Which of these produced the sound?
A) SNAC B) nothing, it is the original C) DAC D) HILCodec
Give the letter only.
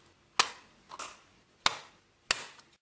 B